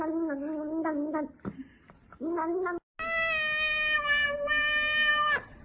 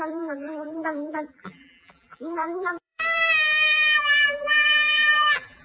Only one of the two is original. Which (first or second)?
first